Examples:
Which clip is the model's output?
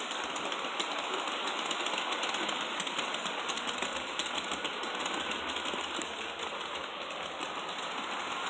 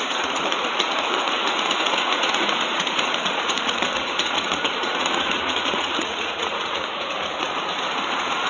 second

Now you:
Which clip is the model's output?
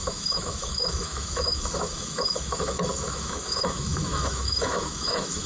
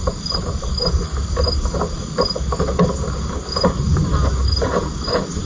first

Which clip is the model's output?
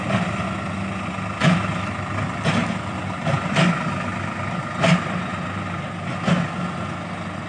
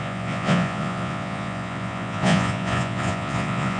second